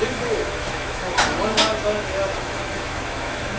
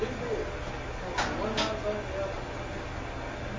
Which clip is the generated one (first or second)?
first